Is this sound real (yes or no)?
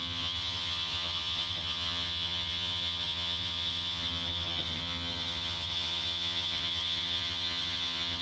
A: no